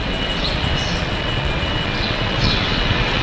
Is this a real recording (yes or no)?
no